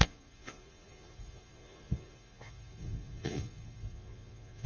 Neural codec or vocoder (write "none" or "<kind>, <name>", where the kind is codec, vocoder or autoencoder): vocoder, Vocos